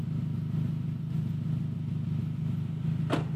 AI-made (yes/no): no